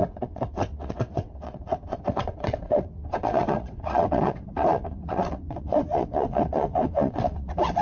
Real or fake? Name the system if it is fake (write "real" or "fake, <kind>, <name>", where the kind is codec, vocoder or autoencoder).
fake, vocoder, WaveNeXt